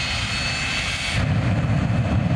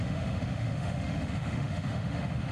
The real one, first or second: first